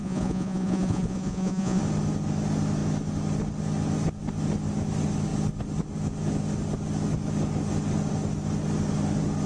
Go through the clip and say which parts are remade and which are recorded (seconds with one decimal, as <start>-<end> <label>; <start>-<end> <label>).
0.0-1.8 remade; 1.8-9.5 recorded